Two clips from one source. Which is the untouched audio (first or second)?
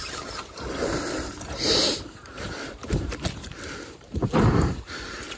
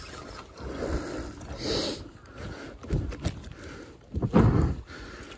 second